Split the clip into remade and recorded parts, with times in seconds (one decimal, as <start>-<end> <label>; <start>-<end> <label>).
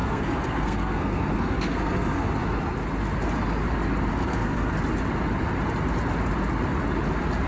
0.0-2.3 remade; 2.3-4.1 recorded; 4.1-4.7 remade; 4.7-7.5 recorded